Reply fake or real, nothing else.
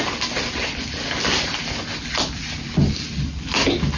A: real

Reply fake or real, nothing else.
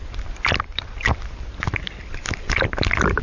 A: real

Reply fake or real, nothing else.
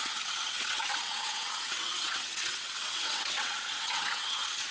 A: fake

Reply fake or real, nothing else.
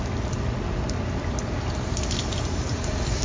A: real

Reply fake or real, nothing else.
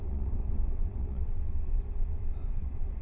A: fake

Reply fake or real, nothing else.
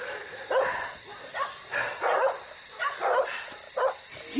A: real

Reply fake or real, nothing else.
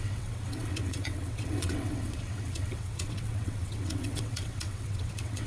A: fake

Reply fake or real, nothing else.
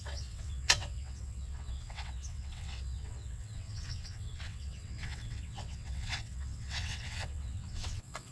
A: fake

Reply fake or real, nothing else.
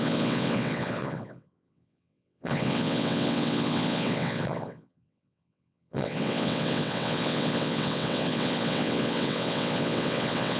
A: fake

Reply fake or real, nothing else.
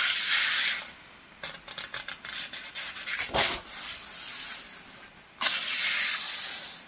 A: real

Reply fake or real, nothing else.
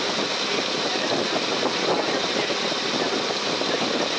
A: real